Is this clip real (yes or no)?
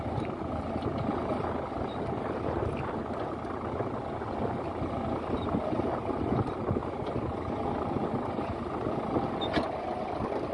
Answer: yes